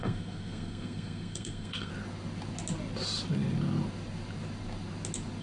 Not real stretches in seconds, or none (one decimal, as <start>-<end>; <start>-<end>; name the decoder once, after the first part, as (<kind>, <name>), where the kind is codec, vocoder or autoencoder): 0.0-1.9 (codec, SNAC)